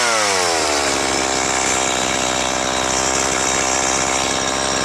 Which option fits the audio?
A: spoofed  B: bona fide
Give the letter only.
B